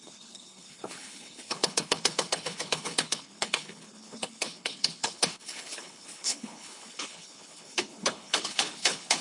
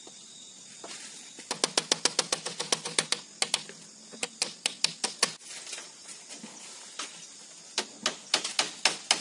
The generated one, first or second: first